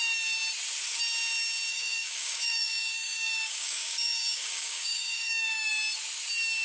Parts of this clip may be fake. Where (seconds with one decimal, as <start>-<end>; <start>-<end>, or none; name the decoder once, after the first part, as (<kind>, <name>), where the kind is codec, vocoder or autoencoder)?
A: 1.7-5.7 (codec, DAC)